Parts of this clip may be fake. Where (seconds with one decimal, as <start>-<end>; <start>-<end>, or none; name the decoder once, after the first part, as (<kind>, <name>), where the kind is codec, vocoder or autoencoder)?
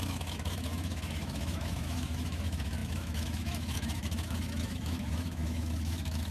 0.0-6.3 (autoencoder, DAC-VAE)